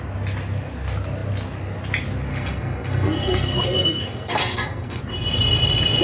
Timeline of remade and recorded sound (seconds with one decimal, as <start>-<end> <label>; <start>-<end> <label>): 0.0-2.3 recorded; 2.3-5.0 remade; 5.0-6.0 recorded